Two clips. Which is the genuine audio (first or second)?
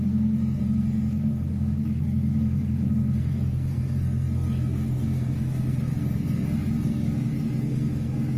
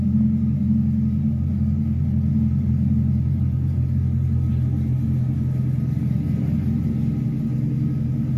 second